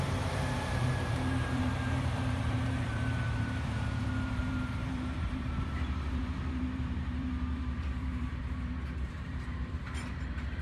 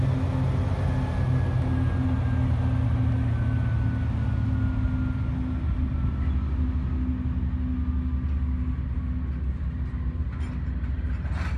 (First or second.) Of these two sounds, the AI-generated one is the first